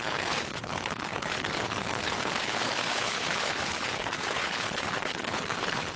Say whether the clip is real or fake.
fake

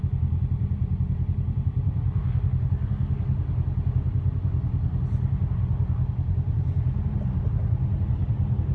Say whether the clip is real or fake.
real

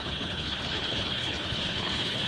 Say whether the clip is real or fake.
fake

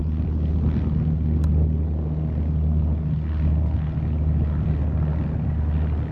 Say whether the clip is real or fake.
real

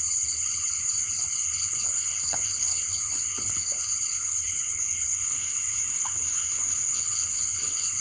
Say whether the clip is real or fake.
fake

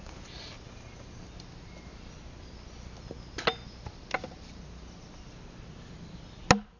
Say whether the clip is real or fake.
real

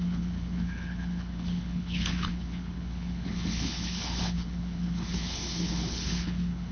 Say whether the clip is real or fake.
fake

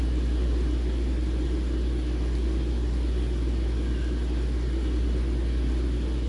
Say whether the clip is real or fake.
real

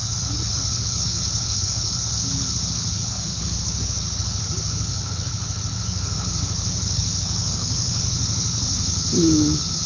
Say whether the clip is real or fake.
fake